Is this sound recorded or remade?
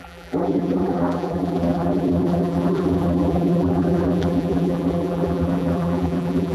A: remade